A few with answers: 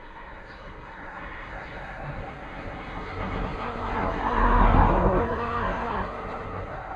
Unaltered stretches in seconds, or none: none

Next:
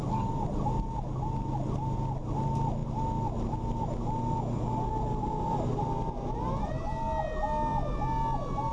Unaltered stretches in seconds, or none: 0.0-8.7